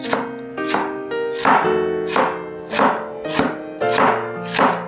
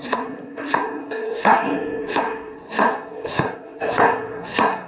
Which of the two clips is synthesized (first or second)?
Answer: second